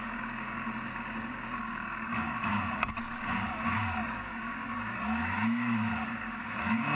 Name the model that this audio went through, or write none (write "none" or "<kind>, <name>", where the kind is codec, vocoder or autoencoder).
codec, DAC